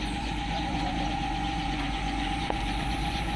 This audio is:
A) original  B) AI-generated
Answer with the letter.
B